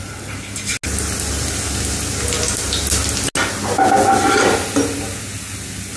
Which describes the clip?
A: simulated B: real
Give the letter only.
B